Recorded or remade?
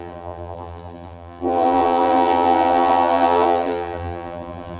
remade